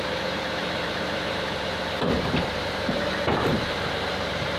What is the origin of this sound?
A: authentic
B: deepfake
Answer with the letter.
B